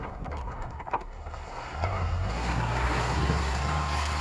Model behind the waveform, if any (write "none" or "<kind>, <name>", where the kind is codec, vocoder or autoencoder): codec, SNAC